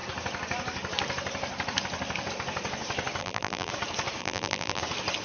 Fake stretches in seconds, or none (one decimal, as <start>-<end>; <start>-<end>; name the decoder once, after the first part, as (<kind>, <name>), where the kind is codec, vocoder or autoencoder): 3.2-3.7 (vocoder, BigVGAN v2); 4.2-4.8